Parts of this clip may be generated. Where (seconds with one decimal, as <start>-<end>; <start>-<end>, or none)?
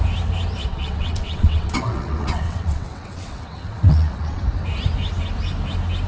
0.7-4.4